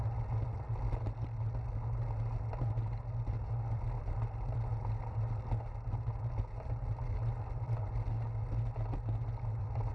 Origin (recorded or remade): recorded